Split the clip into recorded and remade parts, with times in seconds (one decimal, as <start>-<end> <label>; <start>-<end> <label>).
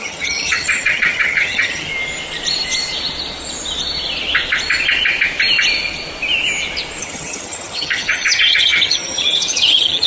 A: 0.0-1.9 remade; 1.9-7.0 recorded; 7.0-10.1 remade